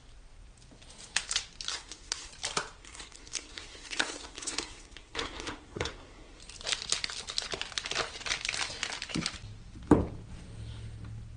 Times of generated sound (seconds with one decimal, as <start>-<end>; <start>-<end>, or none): 1.7-2.3; 2.8-6.4